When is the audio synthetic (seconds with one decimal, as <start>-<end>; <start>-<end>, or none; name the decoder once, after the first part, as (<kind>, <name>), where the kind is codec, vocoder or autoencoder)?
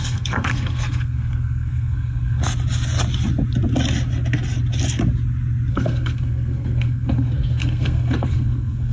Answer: 0.0-2.4 (codec, SNAC); 5.7-8.9